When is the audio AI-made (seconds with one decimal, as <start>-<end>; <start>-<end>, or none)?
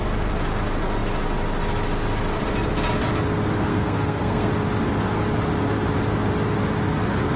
3.7-4.5